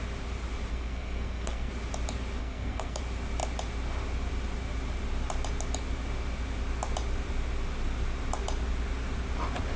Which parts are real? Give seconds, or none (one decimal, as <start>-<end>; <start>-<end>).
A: 0.0-0.7; 1.7-2.4; 3.0-9.8